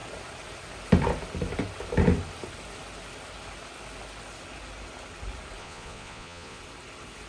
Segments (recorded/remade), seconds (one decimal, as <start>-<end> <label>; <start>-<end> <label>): 0.0-5.6 recorded; 5.6-6.6 remade; 6.6-7.3 recorded